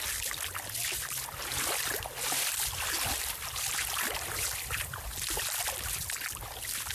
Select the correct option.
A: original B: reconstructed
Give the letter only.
A